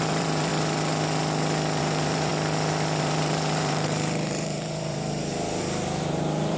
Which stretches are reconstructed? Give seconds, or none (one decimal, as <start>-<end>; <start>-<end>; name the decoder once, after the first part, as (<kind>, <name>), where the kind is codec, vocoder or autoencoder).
0.0-0.5 (vocoder, BigVGAN v2); 1.8-2.3; 3.0-6.6